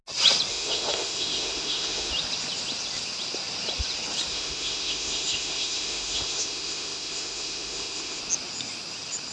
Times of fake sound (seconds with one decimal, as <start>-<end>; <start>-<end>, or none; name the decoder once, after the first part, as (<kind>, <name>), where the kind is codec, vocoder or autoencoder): 0.5-2.1 (autoencoder, DAC-VAE); 4.3-8.2

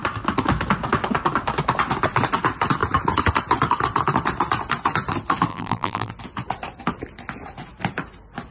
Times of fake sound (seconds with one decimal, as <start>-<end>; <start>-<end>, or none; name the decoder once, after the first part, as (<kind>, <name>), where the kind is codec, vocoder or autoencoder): 5.5-6.1 (vocoder, BigVGAN v2)